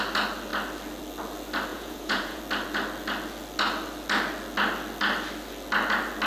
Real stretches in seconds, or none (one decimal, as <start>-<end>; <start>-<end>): 0.0-1.7; 2.4-6.3